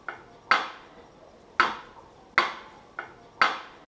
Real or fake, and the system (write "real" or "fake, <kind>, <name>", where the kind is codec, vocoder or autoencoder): real